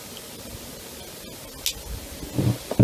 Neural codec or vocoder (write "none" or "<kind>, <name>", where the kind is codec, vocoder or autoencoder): none